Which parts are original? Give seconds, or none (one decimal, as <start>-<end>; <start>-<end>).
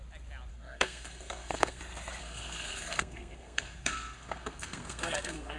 0.0-0.5; 1.8-2.2